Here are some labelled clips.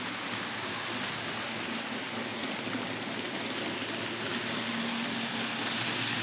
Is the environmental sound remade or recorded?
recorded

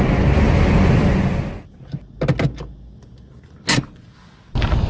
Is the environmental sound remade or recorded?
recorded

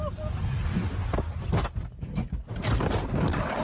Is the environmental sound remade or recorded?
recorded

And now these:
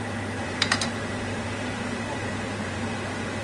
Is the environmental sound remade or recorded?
remade